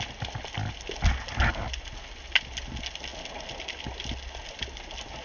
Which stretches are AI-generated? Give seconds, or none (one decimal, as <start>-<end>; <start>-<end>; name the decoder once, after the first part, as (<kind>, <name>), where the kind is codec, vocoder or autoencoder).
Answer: none